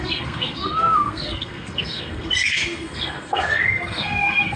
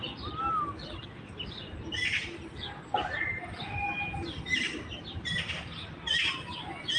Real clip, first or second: second